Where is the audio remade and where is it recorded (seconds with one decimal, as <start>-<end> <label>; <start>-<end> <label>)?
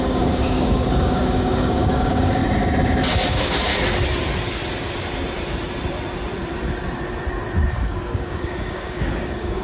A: 0.0-2.4 remade; 2.4-3.3 recorded; 3.3-3.7 remade; 3.7-7.7 recorded; 7.7-9.6 remade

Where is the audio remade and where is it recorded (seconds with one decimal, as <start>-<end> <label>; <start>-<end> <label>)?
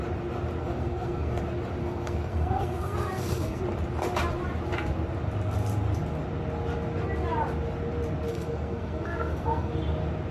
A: 0.0-0.6 recorded; 0.6-1.4 remade; 1.4-1.8 recorded; 1.8-3.6 remade; 3.6-8.3 recorded; 8.3-9.7 remade; 9.7-10.3 recorded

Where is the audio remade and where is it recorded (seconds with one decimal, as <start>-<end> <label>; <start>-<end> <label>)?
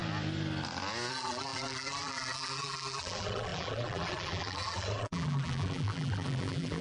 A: 0.0-1.1 recorded; 1.1-6.8 remade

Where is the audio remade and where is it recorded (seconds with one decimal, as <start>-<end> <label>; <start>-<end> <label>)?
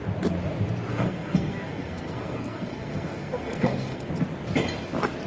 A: 0.0-0.9 recorded; 0.9-4.1 remade; 4.1-5.3 recorded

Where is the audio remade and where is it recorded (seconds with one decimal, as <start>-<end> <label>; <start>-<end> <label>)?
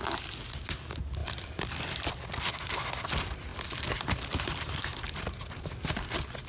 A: 0.0-1.2 recorded; 1.2-2.5 remade; 2.5-6.5 recorded